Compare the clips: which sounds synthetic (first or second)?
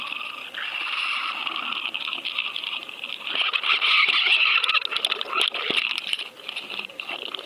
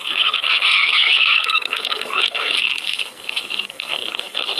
second